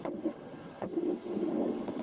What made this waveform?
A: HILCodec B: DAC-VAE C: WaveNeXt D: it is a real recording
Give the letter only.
C